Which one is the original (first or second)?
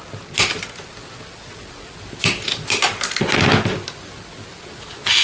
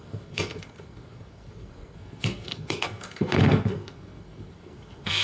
first